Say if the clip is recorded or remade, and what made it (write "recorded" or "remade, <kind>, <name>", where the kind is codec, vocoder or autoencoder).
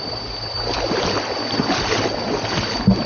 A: recorded